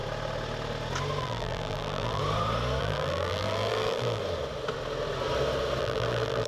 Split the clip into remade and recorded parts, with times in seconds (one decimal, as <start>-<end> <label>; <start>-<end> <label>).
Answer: 0.0-1.2 recorded; 1.2-2.2 remade; 2.2-2.8 recorded; 2.8-4.2 remade; 4.2-5.8 recorded; 5.8-6.5 remade